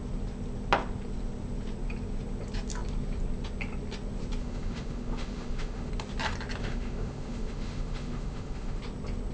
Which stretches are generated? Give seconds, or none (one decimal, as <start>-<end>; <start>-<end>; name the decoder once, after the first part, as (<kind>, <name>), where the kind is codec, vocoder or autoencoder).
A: 4.4-5.9 (autoencoder, DAC-VAE); 6.6-8.8